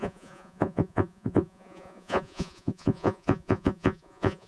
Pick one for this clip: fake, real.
fake